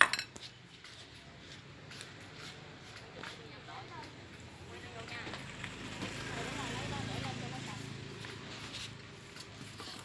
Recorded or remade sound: recorded